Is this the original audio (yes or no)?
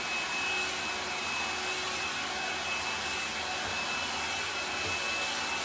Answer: yes